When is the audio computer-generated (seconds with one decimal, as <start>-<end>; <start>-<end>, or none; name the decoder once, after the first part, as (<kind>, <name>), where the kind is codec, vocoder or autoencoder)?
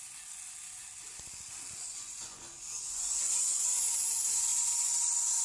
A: 1.8-3.9 (vocoder, Vocos)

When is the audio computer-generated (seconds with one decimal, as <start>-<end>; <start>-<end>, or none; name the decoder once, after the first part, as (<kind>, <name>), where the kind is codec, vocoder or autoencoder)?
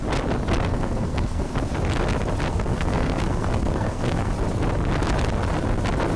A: 0.7-1.5 (codec, SNAC); 2.5-4.3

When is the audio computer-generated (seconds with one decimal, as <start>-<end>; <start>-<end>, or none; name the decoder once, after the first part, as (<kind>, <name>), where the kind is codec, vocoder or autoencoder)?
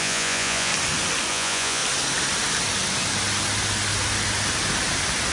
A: 0.0-0.7 (vocoder, Vocos); 1.3-1.8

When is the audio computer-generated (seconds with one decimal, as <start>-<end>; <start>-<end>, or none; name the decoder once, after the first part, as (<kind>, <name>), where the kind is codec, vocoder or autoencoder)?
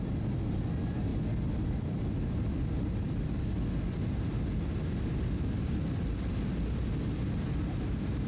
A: none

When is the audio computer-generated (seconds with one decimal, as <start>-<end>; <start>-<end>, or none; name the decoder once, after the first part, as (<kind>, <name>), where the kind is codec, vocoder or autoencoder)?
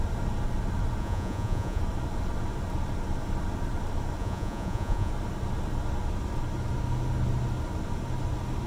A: 1.0-1.8 (vocoder, Vocos); 4.2-5.1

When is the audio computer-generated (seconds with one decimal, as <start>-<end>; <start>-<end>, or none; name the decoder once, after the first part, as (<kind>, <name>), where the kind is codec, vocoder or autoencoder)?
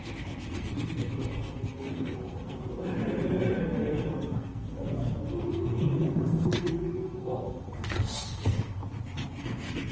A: 0.0-2.6 (codec, SNAC); 3.6-8.8; 9.4-9.9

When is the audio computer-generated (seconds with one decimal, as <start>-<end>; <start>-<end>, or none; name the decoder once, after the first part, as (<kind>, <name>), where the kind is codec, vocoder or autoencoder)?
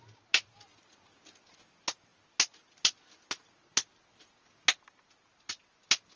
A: none